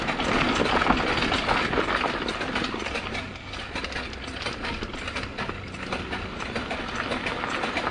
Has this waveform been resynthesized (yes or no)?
no